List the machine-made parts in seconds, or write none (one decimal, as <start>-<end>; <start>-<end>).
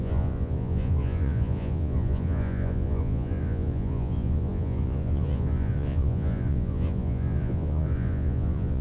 0.0-8.8